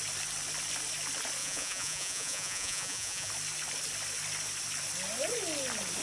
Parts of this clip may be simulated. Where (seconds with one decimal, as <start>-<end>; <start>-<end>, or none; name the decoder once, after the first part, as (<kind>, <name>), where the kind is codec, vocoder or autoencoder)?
1.4-3.3 (vocoder, Vocos)